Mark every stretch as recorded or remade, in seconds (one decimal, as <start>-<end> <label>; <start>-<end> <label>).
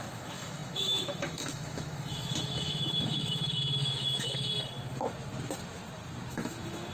0.0-4.5 remade; 4.5-6.3 recorded; 6.3-6.9 remade